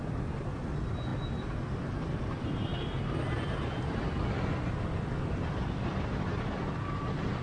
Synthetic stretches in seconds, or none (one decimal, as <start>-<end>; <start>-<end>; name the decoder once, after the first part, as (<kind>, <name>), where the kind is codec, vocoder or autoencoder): none